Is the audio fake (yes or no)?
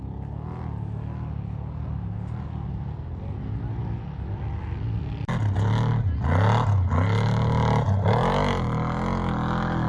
no